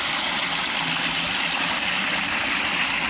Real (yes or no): yes